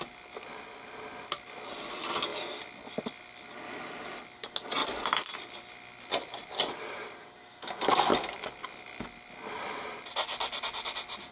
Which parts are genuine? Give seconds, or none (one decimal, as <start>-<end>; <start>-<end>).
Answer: 0.0-4.8; 6.8-8.1; 9.7-11.3